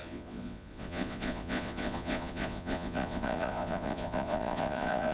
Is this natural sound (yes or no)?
no